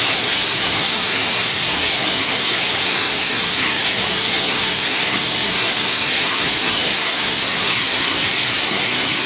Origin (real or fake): fake